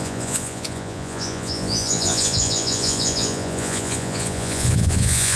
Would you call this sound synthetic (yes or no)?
yes